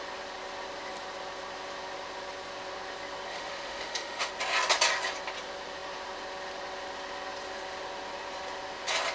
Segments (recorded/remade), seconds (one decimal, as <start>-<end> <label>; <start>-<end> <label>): 0.0-3.3 recorded; 3.3-4.3 remade; 4.3-9.1 recorded